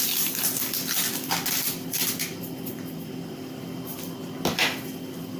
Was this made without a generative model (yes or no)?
yes